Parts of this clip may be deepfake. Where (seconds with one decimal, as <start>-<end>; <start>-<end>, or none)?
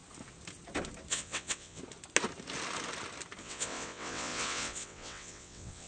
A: 1.1-1.8; 3.4-5.9